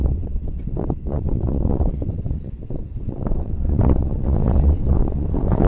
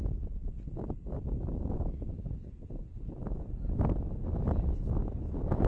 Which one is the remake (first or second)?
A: first